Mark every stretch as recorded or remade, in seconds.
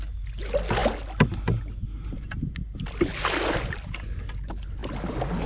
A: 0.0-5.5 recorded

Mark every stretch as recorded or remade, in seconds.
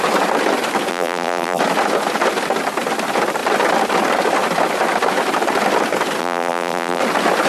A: 0.0-0.9 recorded; 0.9-1.6 remade; 1.6-6.2 recorded; 6.2-7.0 remade; 7.0-7.5 recorded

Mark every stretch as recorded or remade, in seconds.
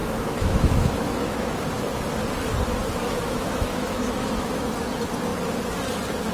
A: 0.0-1.9 remade; 1.9-2.8 recorded; 2.8-4.7 remade; 4.7-6.3 recorded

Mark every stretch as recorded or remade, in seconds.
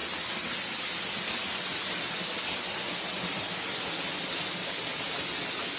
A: 0.0-5.8 recorded